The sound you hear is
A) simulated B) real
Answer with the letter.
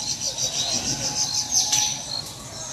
B